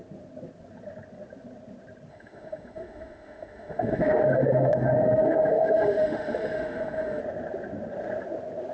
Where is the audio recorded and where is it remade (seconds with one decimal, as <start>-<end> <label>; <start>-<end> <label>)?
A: 0.0-2.1 recorded; 2.1-7.2 remade; 7.2-8.7 recorded